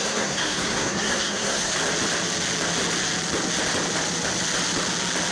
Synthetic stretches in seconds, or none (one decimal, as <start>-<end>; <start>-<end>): 0.0-1.7